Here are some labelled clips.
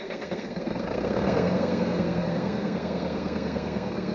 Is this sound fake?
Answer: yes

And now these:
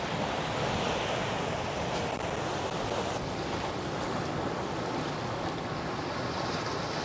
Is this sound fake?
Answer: no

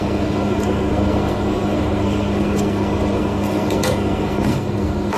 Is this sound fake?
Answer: yes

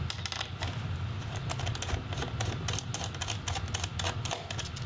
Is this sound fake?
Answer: no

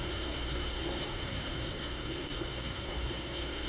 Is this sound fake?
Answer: yes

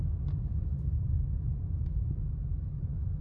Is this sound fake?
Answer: no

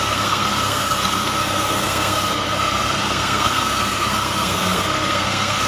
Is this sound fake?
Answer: yes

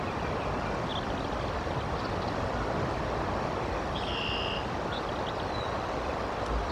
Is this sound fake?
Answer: no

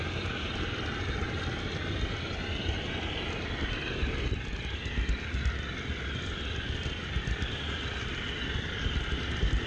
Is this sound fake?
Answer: no